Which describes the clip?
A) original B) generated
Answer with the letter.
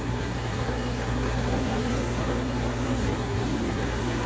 B